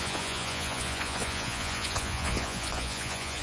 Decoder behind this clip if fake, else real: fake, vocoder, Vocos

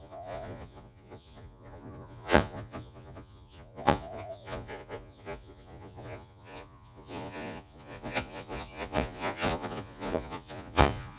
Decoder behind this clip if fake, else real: fake, vocoder, Vocos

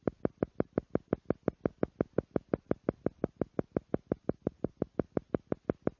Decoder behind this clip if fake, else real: real